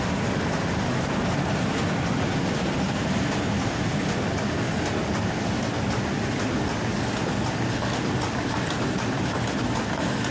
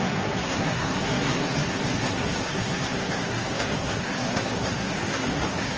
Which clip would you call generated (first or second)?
second